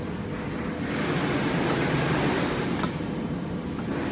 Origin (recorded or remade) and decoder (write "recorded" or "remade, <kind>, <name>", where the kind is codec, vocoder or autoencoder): recorded